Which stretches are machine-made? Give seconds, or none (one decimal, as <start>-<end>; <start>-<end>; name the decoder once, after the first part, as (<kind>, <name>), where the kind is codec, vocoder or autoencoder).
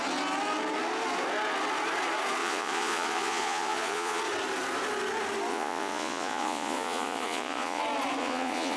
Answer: 2.4-4.2 (vocoder, Vocos); 5.5-7.8; 8.2-8.8